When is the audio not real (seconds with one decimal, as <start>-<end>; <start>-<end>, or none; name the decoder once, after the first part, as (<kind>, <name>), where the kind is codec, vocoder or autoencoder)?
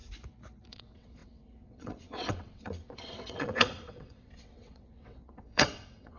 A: 0.7-6.2 (vocoder, WaveNeXt)